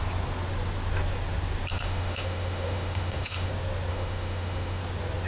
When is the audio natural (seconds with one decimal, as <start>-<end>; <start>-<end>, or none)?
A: 0.0-1.7; 3.5-3.9; 4.8-5.3